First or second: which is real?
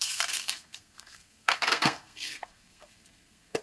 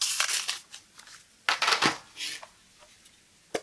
second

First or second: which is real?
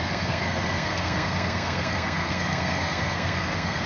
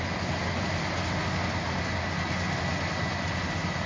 second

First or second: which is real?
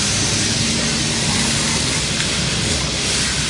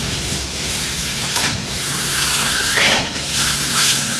first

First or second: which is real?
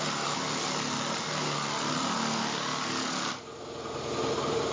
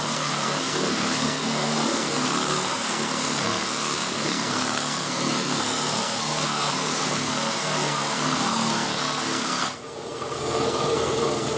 first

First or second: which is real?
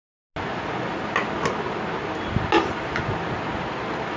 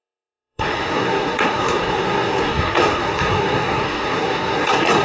first